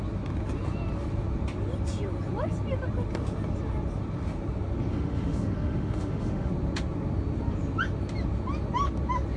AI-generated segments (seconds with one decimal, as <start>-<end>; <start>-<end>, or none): 4.9-6.5

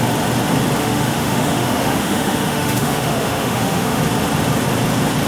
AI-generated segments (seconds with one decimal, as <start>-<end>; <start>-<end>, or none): 0.8-4.0